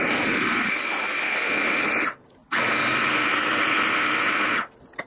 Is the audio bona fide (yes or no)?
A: yes